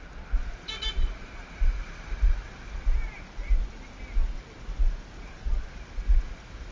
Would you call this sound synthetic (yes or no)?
no